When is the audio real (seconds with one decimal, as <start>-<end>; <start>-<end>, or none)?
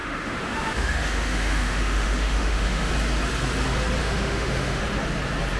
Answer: 2.9-4.0; 4.8-5.6